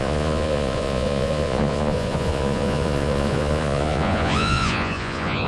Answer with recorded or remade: remade